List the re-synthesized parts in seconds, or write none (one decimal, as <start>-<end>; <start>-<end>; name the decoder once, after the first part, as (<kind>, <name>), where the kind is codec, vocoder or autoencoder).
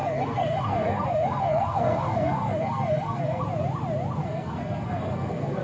0.0-3.4 (codec, SNAC); 4.2-5.6